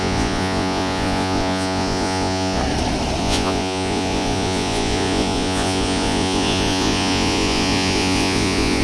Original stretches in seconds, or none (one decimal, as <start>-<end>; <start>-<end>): 2.6-3.2